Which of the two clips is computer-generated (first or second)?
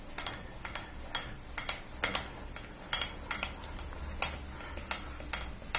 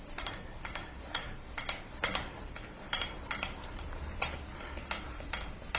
second